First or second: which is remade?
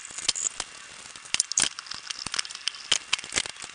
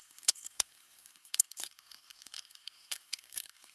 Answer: second